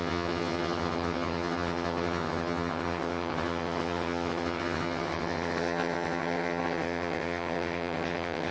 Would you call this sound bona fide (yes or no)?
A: no